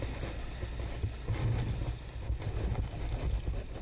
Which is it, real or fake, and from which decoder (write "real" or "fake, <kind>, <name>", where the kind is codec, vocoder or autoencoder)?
real